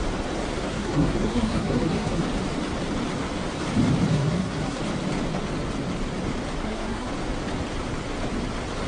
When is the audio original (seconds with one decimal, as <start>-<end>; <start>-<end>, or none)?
0.0-0.7; 2.2-4.1; 4.8-6.6; 7.1-8.9